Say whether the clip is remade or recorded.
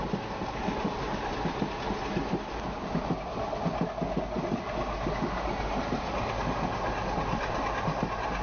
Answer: recorded